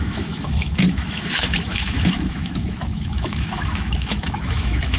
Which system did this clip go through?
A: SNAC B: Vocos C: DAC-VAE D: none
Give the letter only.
C